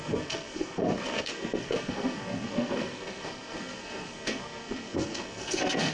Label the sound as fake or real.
fake